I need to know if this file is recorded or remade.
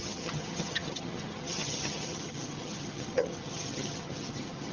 remade